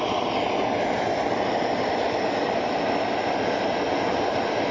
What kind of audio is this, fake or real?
real